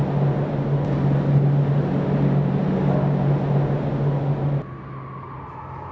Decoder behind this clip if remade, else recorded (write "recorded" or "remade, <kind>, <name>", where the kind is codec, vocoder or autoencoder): recorded